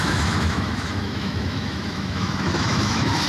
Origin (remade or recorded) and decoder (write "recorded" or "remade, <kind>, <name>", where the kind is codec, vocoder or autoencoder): remade, autoencoder, DAC-VAE